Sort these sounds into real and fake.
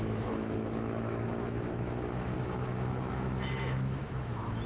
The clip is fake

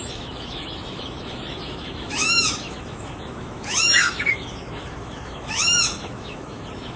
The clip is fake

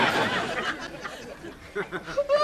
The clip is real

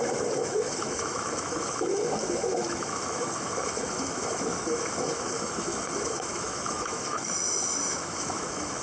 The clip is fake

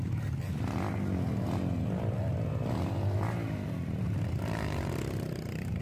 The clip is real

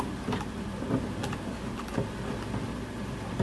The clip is real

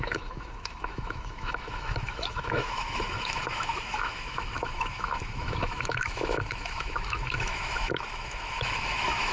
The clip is fake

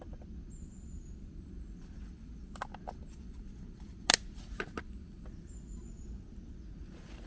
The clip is real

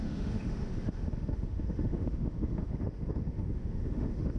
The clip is fake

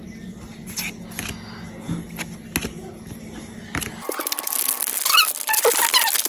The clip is real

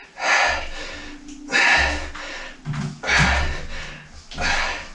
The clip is real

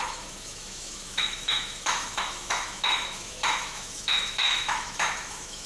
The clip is fake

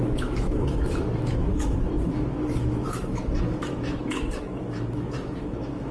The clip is fake